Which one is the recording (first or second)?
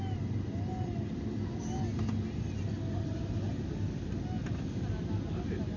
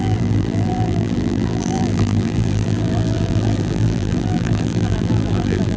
first